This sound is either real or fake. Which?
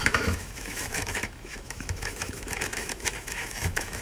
fake